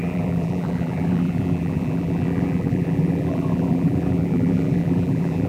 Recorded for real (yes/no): no